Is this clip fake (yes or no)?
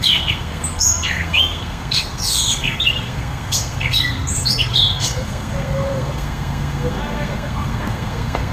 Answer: yes